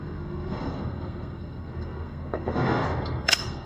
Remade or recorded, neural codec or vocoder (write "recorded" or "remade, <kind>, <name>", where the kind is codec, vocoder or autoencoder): remade, codec, SNAC